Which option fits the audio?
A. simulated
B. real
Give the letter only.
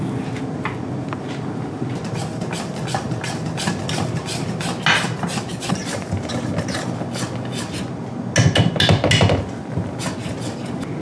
B